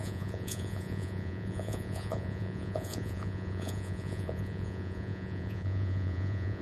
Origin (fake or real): fake